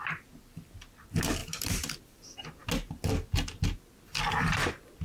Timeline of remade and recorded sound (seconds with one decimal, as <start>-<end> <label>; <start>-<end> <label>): 0.0-1.4 recorded; 1.4-2.0 remade; 2.0-5.0 recorded